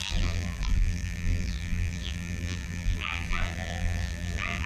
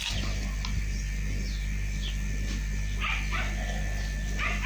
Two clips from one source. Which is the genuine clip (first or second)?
second